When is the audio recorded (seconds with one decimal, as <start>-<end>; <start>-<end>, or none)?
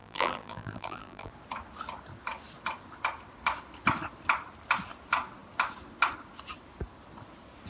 1.3-7.7